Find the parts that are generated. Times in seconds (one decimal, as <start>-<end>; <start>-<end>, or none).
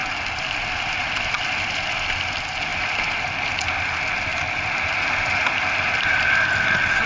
none